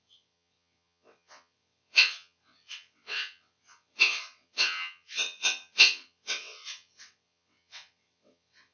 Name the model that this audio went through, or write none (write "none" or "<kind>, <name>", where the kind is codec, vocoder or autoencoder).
vocoder, WaveNeXt